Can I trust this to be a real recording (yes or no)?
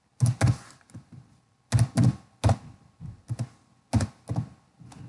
yes